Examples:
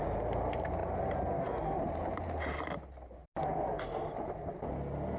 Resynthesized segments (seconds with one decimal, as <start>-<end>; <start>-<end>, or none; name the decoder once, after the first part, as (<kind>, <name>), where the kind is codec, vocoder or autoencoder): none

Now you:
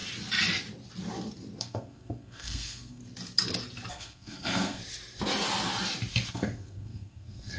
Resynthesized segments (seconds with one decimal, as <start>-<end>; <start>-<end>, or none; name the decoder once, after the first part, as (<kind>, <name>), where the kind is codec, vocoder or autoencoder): 1.6-3.0 (codec, SNAC); 3.9-4.8; 6.3-7.6

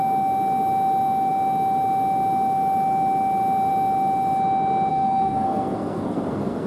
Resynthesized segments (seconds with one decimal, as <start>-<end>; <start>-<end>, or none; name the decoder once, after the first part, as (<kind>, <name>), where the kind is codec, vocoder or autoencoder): 4.9-6.7 (codec, SNAC)

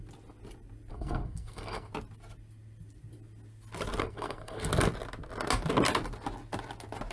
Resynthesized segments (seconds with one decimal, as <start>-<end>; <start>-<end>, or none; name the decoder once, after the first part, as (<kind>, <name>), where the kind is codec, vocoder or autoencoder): 0.9-1.9 (codec, SNAC); 4.0-4.7

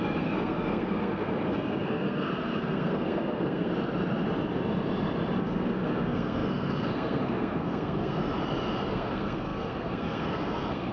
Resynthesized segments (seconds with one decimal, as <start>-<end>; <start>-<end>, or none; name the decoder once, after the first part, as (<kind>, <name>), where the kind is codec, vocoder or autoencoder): 0.0-3.7 (codec, SNAC); 5.4-8.2; 8.9-10.9

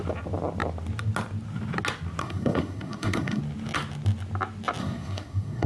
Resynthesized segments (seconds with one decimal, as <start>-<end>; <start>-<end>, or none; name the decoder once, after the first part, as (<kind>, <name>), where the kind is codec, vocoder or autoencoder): 2.2-3.4 (codec, SNAC); 4.8-5.7

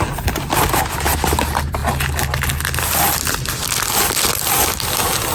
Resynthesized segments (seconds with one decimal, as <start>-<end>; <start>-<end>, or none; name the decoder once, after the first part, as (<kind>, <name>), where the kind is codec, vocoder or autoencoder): none

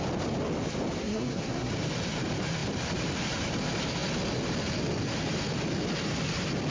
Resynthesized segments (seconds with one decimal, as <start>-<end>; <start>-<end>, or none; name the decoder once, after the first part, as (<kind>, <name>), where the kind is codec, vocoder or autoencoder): 1.0-1.7 (codec, SNAC)